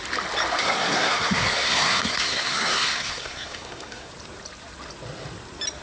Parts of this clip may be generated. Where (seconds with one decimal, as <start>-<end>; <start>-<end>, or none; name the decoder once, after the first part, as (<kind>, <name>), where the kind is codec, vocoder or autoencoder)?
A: 0.6-4.1 (codec, SNAC)